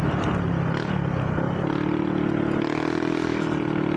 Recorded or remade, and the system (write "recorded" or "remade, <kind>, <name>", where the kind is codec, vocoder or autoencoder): recorded